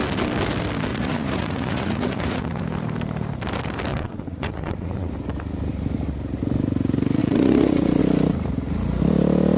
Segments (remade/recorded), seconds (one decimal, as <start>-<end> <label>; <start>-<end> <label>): 0.0-0.9 recorded; 0.9-2.6 remade; 2.6-3.9 recorded; 3.9-5.1 remade; 5.1-7.2 recorded; 7.2-8.0 remade; 8.0-9.6 recorded

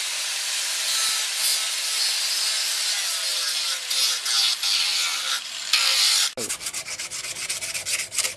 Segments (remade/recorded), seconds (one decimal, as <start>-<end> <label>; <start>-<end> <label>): 0.0-8.4 recorded